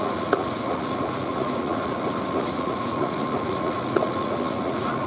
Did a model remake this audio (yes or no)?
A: yes